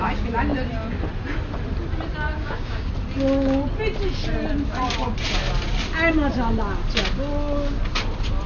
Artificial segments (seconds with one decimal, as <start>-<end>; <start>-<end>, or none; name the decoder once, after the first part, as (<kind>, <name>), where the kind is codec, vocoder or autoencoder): 2.3-2.9 (codec, DAC)